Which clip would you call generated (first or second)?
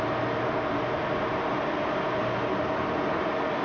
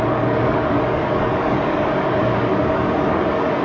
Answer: second